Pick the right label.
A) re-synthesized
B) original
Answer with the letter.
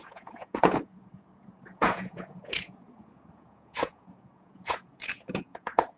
A